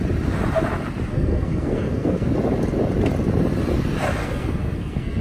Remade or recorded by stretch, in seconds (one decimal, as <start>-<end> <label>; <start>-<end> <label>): 0.0-1.1 recorded; 1.1-2.3 remade; 2.3-4.2 recorded; 4.2-5.2 remade